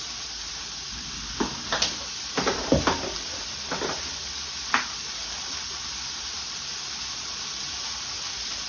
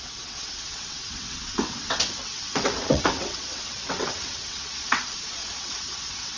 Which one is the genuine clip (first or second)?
first